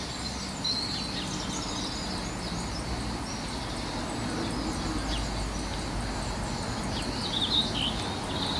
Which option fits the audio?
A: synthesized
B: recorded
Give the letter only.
B